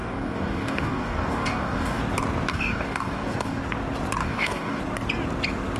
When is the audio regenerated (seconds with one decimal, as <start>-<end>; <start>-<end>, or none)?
0.0-2.0; 2.5-3.6; 4.2-4.8